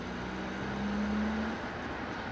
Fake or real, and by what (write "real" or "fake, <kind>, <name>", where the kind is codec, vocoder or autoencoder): real